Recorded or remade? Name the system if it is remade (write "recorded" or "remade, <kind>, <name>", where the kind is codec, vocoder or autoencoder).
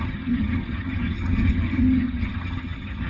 remade, vocoder, HiFi-GAN